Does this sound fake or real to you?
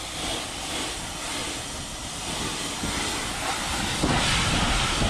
real